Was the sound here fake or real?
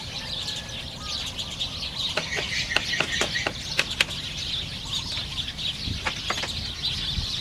real